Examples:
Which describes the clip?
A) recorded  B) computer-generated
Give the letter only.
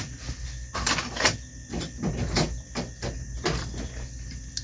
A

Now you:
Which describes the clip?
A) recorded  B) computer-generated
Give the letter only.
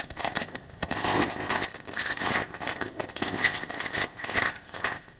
B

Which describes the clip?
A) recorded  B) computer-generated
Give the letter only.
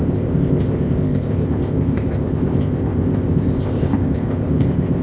B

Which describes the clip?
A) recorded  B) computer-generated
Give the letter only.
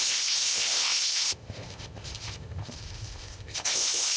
B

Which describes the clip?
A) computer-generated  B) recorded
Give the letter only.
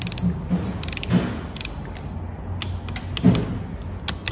B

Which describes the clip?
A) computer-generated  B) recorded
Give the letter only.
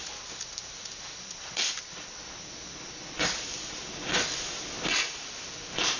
B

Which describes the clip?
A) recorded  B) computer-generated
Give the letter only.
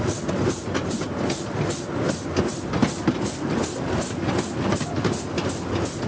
A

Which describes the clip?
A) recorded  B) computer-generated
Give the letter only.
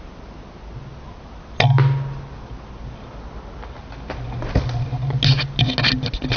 A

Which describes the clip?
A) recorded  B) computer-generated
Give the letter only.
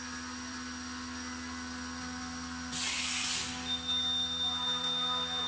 A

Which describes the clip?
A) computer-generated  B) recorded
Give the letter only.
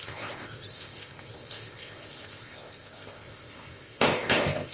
A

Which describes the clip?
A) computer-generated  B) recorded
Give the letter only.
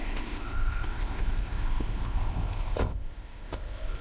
A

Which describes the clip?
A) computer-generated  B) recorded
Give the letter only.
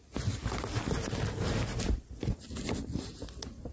B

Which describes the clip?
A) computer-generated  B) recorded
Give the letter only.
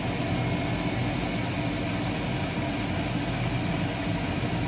B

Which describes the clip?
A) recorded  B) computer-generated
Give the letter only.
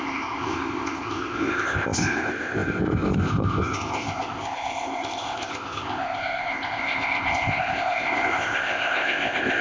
B